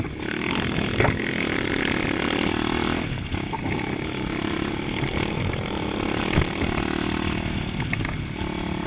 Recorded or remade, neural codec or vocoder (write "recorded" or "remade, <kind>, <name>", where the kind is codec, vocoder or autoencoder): recorded